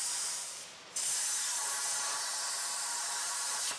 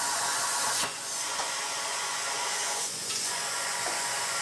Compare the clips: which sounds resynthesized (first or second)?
second